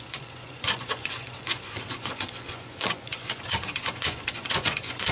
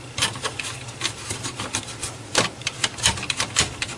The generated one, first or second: first